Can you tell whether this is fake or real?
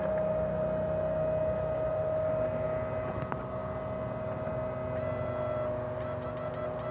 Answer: real